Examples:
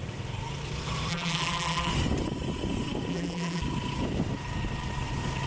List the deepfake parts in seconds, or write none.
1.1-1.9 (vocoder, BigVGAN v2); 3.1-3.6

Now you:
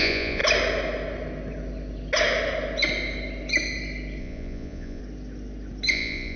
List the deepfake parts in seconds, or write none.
0.0-0.4 (vocoder, Vocos); 4.2-5.0; 5.9-6.4

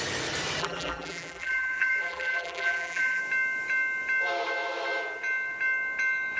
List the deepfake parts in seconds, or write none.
0.6-3.2 (vocoder, BigVGAN v2)

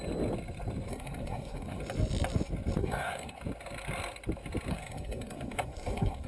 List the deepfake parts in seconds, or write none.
0.9-1.8 (codec, SNAC); 2.8-3.4; 4.7-6.3